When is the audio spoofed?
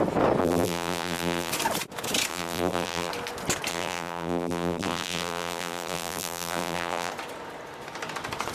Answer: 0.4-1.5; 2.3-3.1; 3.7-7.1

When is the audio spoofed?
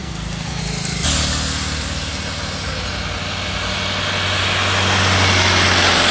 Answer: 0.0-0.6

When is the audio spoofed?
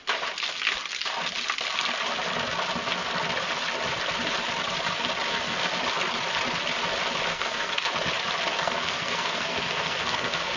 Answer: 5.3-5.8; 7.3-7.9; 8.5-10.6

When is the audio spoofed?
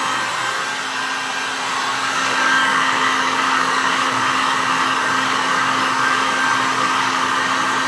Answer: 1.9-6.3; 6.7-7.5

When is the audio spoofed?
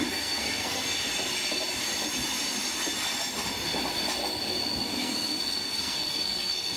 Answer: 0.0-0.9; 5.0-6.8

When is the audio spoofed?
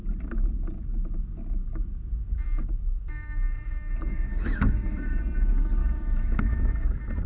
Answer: 4.1-5.2; 5.8-6.7